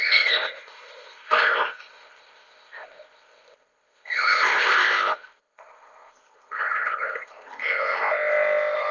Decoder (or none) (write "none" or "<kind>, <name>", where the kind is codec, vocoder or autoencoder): codec, ZipCodec